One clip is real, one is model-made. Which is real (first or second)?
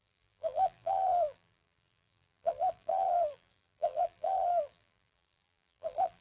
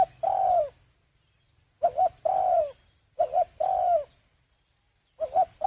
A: second